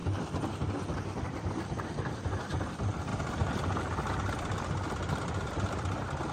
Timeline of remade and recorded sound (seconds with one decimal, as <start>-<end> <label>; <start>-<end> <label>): 0.0-6.3 remade